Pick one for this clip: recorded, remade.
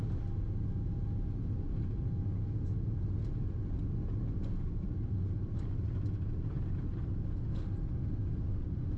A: recorded